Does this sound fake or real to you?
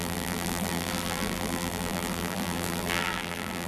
fake